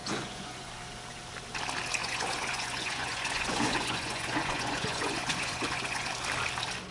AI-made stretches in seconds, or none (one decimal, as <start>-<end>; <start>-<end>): 0.0-0.7; 2.0-6.1